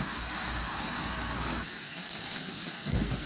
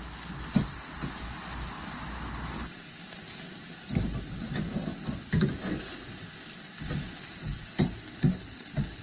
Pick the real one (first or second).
second